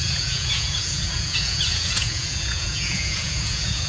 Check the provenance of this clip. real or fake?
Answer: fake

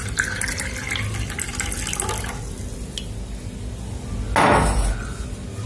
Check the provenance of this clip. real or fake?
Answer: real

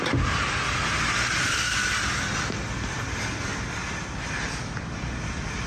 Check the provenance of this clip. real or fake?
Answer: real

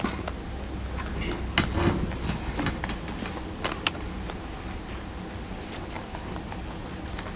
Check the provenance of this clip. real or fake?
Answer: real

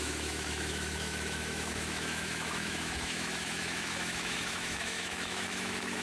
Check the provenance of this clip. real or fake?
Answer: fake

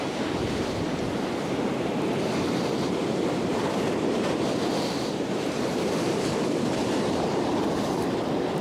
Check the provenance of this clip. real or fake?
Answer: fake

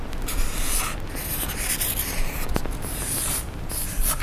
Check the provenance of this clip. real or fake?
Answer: fake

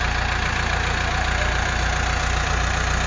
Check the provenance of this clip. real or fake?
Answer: real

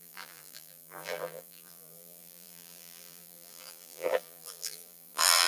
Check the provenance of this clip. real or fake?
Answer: fake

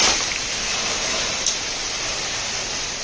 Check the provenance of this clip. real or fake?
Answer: real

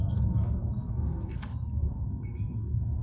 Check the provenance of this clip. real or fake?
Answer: fake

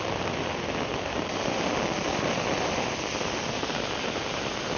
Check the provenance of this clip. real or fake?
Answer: real